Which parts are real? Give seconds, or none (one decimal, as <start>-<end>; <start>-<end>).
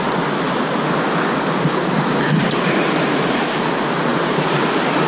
0.0-4.1